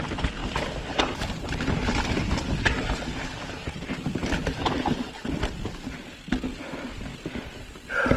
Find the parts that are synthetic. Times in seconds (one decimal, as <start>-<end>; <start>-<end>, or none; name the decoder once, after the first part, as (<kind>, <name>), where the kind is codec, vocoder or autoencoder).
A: 0.0-0.4 (vocoder, BigVGAN v2); 4.1-7.1